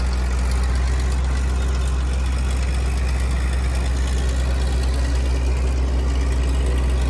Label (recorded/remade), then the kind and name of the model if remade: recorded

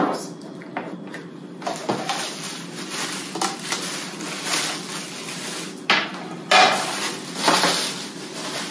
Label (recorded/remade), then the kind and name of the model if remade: recorded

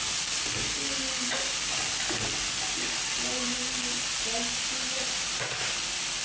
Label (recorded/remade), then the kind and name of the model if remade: recorded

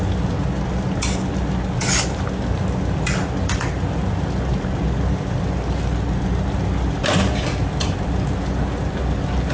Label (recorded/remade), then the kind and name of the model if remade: recorded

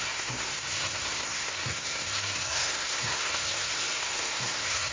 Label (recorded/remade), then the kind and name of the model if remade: remade, codec, SNAC